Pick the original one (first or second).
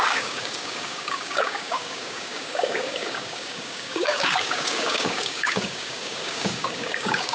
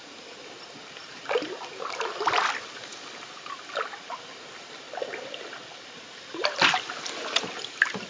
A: second